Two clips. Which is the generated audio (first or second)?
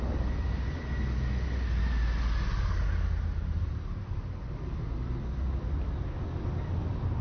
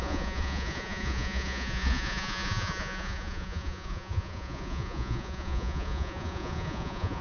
second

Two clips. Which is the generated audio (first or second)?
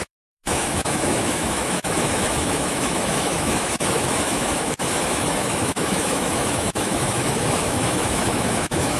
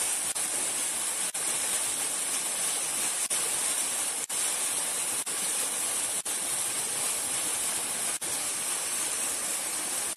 first